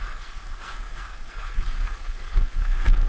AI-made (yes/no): yes